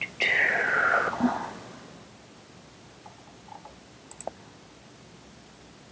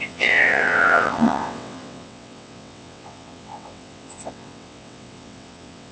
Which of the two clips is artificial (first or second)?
second